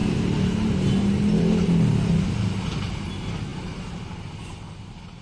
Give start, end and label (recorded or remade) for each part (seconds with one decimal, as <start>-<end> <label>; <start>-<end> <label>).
0.0-5.2 recorded